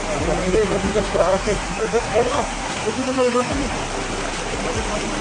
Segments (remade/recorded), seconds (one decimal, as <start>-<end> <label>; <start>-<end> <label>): 0.0-0.4 recorded; 0.4-3.5 remade; 3.5-5.2 recorded